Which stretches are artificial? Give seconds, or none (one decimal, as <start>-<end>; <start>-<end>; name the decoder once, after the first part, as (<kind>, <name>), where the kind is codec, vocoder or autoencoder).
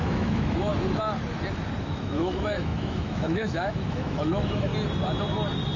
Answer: 0.0-0.7 (autoencoder, DAC-VAE); 1.8-4.7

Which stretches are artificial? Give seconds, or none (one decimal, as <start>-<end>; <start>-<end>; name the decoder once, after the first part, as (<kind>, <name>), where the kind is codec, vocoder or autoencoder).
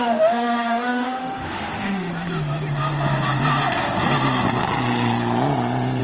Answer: 0.0-2.1 (autoencoder, DAC-VAE)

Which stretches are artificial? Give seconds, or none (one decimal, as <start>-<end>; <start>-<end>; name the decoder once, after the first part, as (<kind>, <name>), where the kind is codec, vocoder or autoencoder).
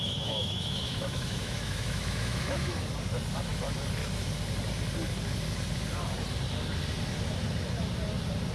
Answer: 0.0-2.8 (autoencoder, DAC-VAE)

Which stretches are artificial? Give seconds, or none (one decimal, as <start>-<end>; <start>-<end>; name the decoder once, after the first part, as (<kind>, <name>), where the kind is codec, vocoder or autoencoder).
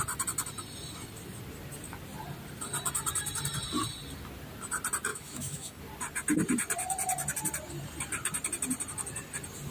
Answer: 5.1-5.8 (autoencoder, DAC-VAE)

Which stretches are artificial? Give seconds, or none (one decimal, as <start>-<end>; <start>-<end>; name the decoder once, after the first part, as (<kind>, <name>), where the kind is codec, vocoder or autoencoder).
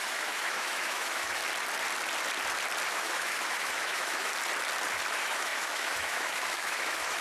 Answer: 0.0-1.4 (autoencoder, DAC-VAE); 2.9-4.3; 5.1-7.2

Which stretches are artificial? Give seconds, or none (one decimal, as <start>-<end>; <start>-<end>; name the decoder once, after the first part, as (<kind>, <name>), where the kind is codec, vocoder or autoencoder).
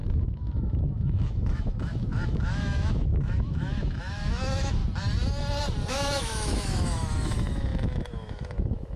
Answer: 0.0-4.8 (autoencoder, DAC-VAE); 5.9-9.0